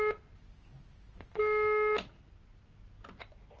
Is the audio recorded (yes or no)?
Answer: yes